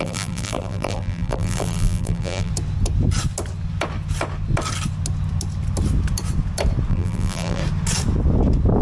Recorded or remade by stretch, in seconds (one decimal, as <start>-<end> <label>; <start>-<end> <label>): 0.0-2.5 remade; 2.5-6.9 recorded; 6.9-7.6 remade; 7.6-8.8 recorded